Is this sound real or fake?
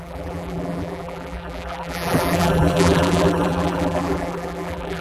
fake